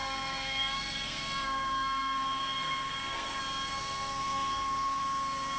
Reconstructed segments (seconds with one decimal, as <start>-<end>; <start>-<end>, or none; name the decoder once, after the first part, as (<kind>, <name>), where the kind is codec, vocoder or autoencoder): 0.0-3.4 (codec, SNAC); 3.8-5.0